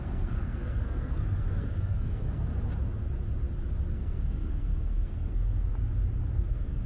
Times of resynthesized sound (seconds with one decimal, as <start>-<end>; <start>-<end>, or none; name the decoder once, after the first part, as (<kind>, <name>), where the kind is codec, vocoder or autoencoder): 0.0-2.5 (codec, SNAC); 3.9-5.7; 6.3-6.9